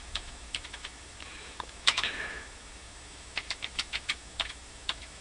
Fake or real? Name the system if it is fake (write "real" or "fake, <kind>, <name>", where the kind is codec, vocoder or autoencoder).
fake, autoencoder, DAC-VAE